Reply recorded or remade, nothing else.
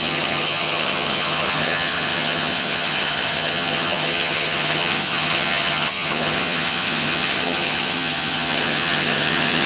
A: remade